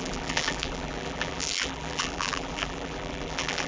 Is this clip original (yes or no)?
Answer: no